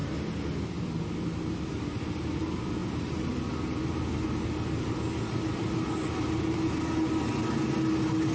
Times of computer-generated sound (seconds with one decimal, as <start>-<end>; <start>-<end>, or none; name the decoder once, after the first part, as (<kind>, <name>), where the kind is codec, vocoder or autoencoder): none